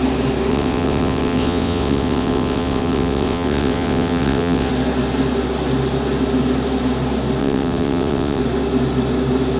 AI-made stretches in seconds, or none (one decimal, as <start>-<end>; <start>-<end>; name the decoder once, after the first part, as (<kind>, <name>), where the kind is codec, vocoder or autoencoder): 0.5-4.7 (vocoder, WaveNeXt); 7.4-8.4